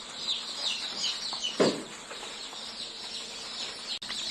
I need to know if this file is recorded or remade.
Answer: recorded